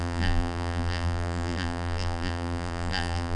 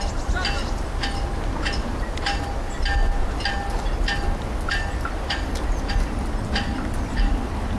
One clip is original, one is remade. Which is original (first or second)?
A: second